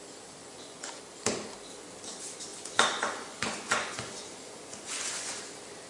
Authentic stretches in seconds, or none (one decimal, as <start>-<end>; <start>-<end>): 0.0-0.4; 1.0-2.5; 5.3-5.9